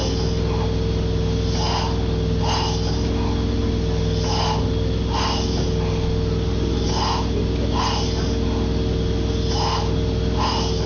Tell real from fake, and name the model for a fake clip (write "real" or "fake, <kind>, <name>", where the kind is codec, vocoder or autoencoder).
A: real